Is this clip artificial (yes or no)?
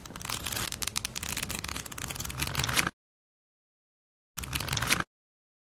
no